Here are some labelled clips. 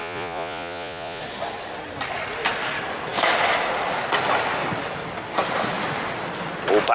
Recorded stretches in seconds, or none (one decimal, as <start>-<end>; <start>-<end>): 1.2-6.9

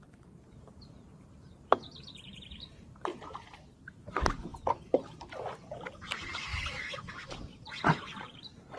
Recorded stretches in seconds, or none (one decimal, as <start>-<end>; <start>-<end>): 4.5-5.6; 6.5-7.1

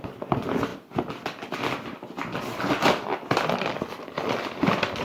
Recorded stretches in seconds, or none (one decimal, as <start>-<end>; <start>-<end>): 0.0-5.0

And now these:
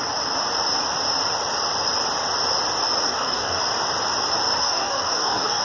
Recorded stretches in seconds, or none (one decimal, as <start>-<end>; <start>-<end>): 0.0-3.0; 3.6-4.6

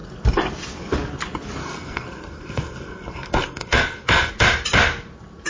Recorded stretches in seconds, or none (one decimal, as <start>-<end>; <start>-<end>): 0.0-1.6; 4.3-5.5